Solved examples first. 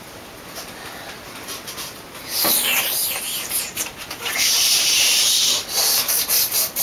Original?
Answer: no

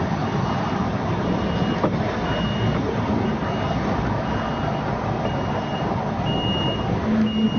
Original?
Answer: yes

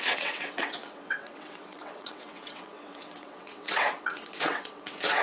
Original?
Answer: no